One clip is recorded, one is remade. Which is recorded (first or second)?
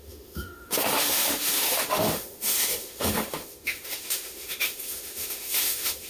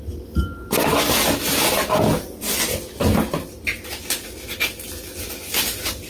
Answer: second